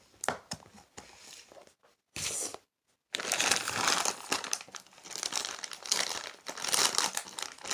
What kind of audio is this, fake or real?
real